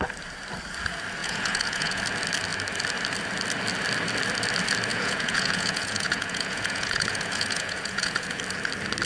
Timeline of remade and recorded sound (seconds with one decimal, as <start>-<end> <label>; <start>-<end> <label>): 0.0-1.2 recorded; 1.2-2.0 remade; 2.0-4.9 recorded; 4.9-8.4 remade; 8.4-9.1 recorded